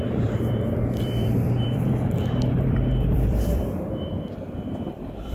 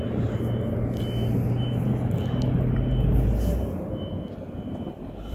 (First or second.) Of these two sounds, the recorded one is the second